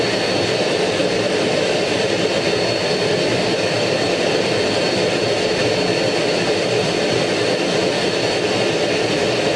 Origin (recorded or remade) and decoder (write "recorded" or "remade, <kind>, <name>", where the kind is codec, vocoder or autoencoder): recorded